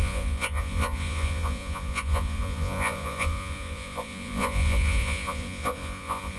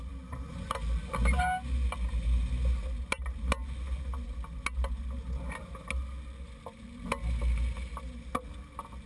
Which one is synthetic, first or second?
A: first